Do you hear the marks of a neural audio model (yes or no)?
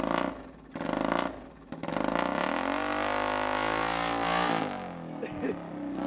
no